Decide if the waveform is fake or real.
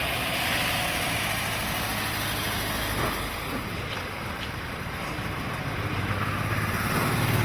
real